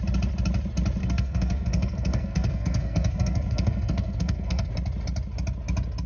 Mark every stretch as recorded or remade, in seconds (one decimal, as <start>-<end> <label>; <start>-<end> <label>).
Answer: 0.0-1.0 recorded; 1.0-4.7 remade; 4.7-6.1 recorded